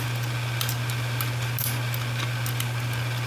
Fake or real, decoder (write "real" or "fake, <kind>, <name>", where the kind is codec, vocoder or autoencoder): real